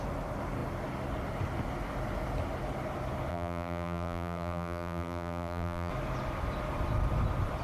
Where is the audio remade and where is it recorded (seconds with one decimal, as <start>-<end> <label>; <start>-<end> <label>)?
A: 0.0-3.3 recorded; 3.3-5.9 remade; 5.9-7.6 recorded